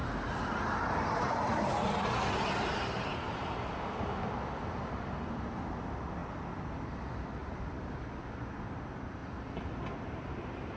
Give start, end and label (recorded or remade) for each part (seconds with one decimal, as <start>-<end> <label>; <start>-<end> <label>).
0.0-10.8 recorded